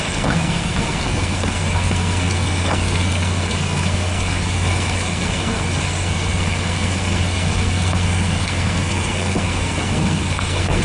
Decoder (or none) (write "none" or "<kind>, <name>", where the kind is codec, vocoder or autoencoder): codec, SNAC